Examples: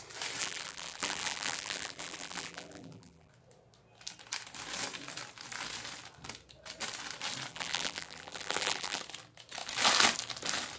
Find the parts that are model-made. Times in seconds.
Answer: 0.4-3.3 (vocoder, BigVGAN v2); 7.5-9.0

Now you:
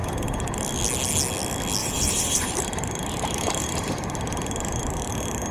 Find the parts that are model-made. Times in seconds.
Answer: 1.8-5.1 (vocoder, BigVGAN v2)

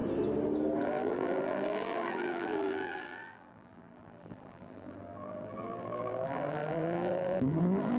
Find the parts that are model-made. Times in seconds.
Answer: 0.8-8.0 (vocoder, BigVGAN v2)

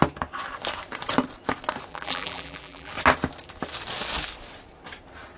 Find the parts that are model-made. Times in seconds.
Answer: 1.9-2.9 (vocoder, BigVGAN v2)